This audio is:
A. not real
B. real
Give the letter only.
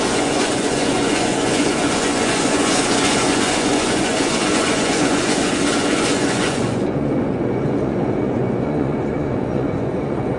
A